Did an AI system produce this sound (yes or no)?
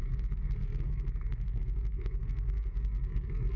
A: yes